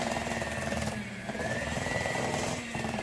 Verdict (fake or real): fake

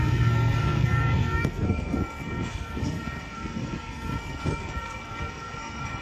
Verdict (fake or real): fake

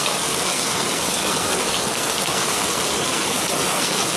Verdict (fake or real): fake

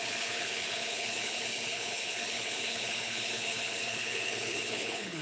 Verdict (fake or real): fake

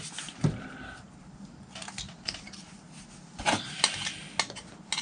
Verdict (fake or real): real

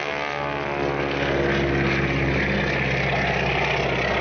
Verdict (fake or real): real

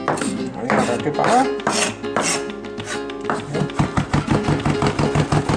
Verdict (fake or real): real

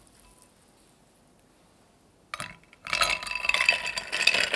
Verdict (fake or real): real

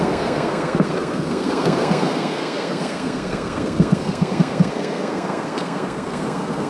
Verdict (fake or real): fake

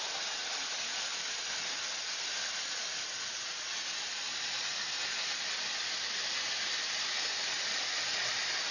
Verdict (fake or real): real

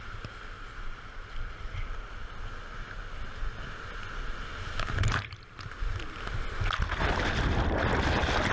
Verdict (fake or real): real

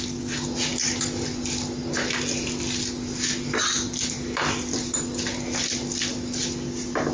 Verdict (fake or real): real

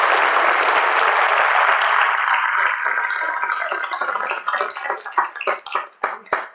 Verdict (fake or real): fake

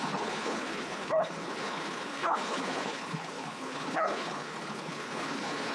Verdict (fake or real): fake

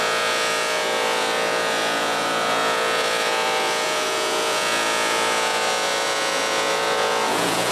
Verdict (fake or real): fake